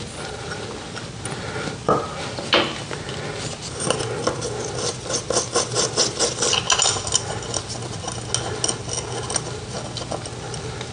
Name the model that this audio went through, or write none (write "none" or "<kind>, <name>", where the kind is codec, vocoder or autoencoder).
none